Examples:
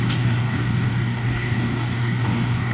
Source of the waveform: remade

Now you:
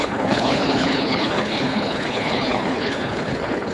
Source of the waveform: remade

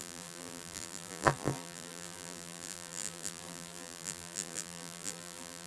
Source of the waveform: remade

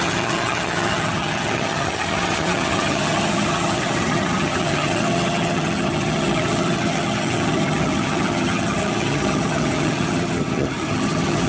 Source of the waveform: remade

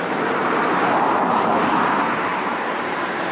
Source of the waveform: remade